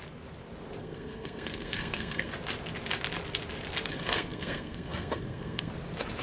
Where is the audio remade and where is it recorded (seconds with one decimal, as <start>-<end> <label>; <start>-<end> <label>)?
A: 0.0-0.8 recorded; 0.8-2.3 remade; 2.3-3.9 recorded; 3.9-5.7 remade; 5.7-6.2 recorded